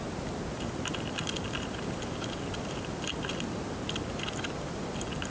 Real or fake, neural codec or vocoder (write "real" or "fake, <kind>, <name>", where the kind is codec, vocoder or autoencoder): real